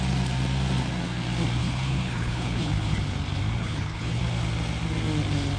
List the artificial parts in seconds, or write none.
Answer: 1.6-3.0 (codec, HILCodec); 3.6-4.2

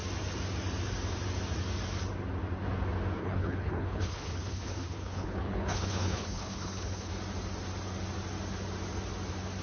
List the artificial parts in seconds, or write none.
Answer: 3.2-7.1 (codec, HILCodec)

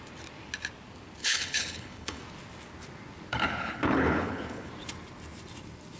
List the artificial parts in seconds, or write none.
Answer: 1.2-2.2 (codec, HILCodec); 3.3-4.7

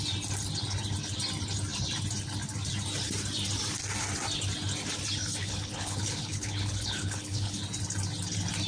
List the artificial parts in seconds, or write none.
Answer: 5.3-7.6 (codec, HILCodec)

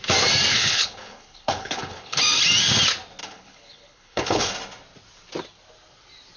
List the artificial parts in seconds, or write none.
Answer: 0.5-2.2 (codec, HILCodec); 3.2-4.5

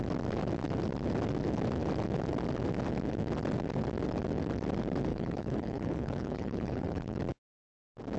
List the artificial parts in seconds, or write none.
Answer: 5.1-7.2 (codec, HILCodec)